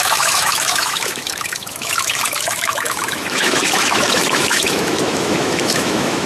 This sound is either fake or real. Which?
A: fake